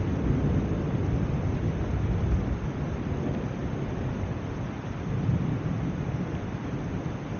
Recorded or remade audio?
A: remade